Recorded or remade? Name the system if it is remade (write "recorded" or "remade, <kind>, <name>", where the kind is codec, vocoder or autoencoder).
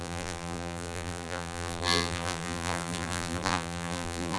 remade, vocoder, BigVGAN v2